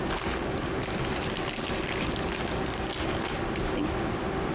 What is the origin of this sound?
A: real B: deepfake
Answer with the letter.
A